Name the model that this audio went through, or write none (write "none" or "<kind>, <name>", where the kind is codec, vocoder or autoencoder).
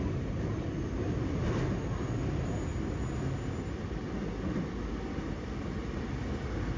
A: none